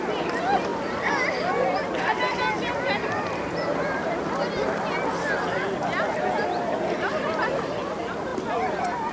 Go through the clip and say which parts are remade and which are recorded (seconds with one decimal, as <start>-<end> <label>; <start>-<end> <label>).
0.0-9.1 recorded